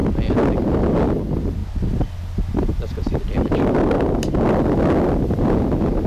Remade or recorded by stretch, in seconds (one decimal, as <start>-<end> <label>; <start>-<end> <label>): 0.0-6.1 recorded